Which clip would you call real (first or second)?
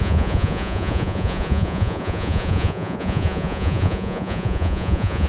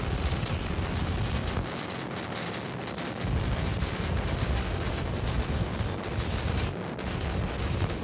second